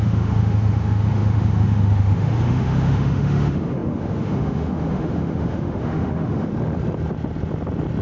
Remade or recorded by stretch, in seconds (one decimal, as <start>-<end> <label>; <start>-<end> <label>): 0.0-6.5 remade; 6.5-8.0 recorded